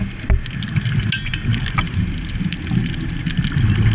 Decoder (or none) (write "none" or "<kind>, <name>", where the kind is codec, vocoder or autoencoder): none